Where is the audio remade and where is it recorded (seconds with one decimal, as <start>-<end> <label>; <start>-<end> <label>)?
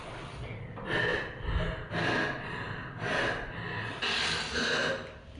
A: 0.0-5.4 recorded